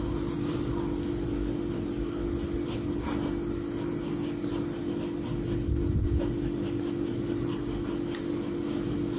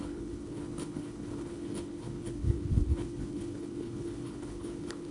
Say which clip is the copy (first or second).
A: second